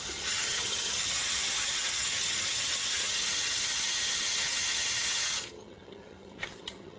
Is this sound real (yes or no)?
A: no